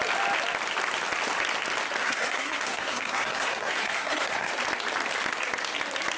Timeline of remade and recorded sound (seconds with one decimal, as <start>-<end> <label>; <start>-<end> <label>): 0.0-2.0 recorded; 2.0-4.5 remade; 4.5-6.2 recorded